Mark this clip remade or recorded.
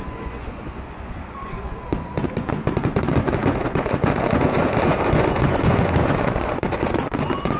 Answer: remade